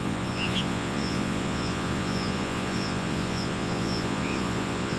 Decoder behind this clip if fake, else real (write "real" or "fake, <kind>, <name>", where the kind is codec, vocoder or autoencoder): fake, vocoder, Vocos